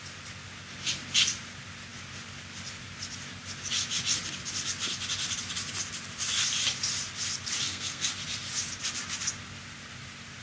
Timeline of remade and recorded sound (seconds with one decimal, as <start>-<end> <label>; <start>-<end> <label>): 0.0-7.6 recorded; 7.6-8.1 remade; 8.1-10.4 recorded